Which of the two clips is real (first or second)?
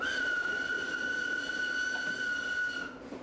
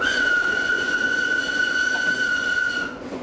first